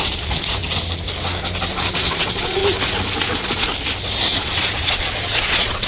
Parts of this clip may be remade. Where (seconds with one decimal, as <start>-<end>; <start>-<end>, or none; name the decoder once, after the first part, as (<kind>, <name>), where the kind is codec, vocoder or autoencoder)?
0.0-0.6 (vocoder, Vocos); 1.7-2.6; 3.2-3.7; 4.3-5.9